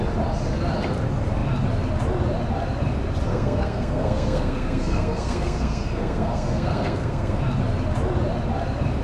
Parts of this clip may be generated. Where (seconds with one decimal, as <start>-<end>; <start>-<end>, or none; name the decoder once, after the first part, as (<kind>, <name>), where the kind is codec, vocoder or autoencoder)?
3.3-7.4 (codec, SNAC)